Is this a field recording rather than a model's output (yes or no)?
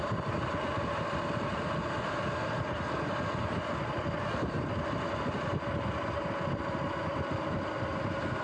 yes